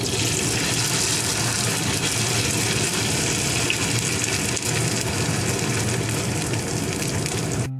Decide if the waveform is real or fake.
real